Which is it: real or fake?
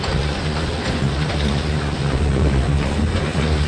fake